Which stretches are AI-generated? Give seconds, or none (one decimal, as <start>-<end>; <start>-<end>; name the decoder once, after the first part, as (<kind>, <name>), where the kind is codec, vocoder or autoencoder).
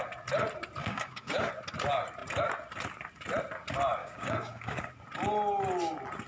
0.8-1.5 (codec, DAC); 4.0-4.9